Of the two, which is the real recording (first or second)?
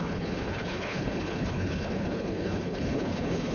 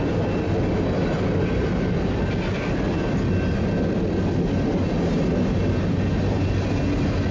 second